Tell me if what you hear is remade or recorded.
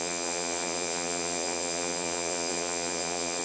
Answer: remade